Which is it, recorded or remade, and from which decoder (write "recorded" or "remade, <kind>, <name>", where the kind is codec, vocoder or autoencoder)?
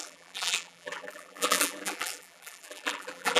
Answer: remade, vocoder, BigVGAN v2